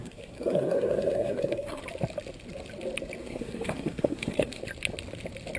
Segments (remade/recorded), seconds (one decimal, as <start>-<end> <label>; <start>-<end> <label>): 0.0-1.8 remade; 1.8-3.2 recorded; 3.2-4.6 remade; 4.6-5.6 recorded